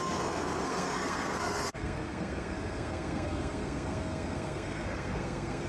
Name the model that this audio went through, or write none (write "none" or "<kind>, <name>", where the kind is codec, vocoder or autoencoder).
codec, SNAC